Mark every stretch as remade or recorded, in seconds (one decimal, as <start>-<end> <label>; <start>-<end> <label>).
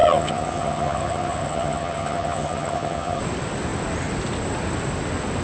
0.0-3.2 remade; 3.2-5.4 recorded